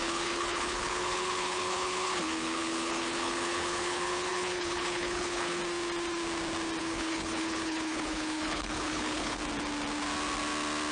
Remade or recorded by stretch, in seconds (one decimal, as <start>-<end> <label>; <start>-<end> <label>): 0.0-5.6 remade; 5.6-6.8 recorded; 6.8-9.4 remade; 9.4-10.9 recorded

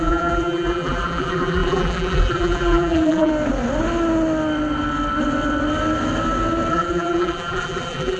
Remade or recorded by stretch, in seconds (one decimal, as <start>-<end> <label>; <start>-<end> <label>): 0.0-3.3 remade; 3.3-6.7 recorded; 6.7-8.2 remade

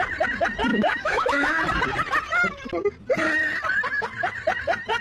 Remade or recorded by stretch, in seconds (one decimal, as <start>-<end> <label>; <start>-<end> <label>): 0.0-0.7 recorded; 0.7-1.6 remade; 1.6-5.0 recorded

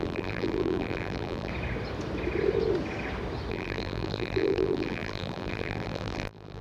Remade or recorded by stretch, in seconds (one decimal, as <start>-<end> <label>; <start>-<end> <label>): 0.0-1.5 remade; 1.5-3.5 recorded; 3.5-6.6 remade

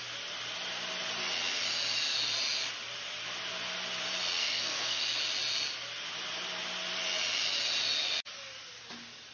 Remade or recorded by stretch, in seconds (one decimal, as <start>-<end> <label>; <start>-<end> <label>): 0.0-4.4 recorded; 4.4-5.0 remade; 5.0-9.3 recorded

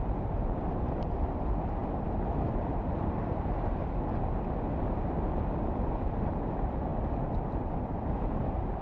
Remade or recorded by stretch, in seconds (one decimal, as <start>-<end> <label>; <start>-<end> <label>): 0.0-1.8 remade; 1.8-2.7 recorded; 2.7-3.8 remade; 3.8-5.8 recorded; 5.8-6.9 remade; 6.9-8.8 recorded

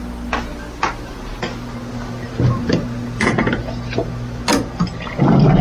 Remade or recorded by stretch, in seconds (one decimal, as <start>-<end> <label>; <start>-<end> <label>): 0.0-5.6 recorded